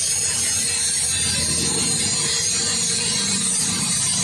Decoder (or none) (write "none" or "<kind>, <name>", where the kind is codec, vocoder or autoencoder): none